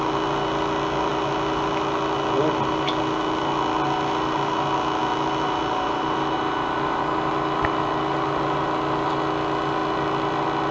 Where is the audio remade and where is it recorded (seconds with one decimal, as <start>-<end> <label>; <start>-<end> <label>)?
0.0-10.7 recorded